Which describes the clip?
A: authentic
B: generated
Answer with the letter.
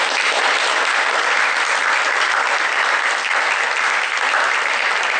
B